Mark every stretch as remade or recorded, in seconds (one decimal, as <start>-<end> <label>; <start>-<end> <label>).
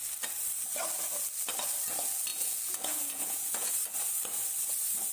0.0-2.3 recorded; 2.3-3.7 remade; 3.7-5.1 recorded